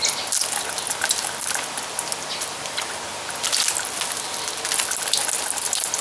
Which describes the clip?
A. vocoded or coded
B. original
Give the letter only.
B